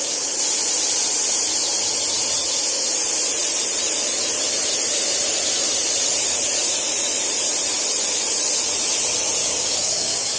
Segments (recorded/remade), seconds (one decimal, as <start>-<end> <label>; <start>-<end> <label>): 0.0-9.4 recorded; 9.4-10.4 remade

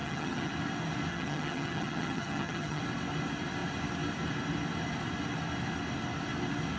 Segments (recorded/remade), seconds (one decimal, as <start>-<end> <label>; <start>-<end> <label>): 0.0-0.5 remade; 0.5-1.1 recorded; 1.1-2.8 remade; 2.8-6.8 recorded